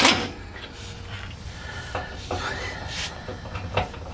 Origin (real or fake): real